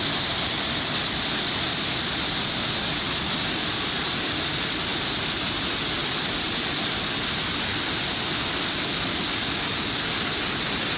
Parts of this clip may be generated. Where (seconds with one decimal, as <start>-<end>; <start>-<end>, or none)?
none